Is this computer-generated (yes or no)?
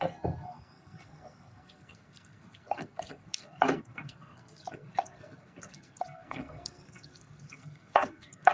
yes